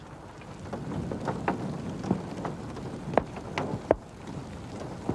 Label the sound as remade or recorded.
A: recorded